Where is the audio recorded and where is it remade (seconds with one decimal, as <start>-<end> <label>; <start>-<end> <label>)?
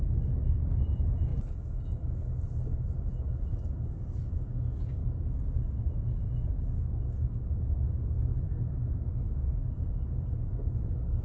0.0-11.2 recorded